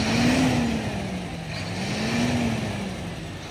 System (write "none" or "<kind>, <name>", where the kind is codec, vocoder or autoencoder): none